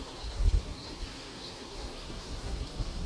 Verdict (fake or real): fake